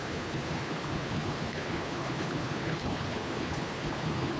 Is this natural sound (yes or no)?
no